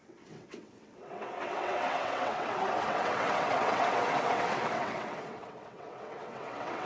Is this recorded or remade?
remade